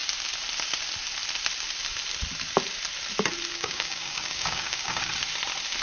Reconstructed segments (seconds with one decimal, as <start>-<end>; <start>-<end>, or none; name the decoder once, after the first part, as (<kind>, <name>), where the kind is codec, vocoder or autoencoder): 3.5-5.0 (codec, DAC)